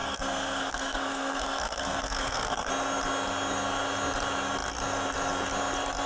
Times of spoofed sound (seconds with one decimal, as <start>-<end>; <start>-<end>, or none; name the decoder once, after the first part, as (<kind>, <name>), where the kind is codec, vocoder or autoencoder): 0.0-2.7 (codec, SNAC)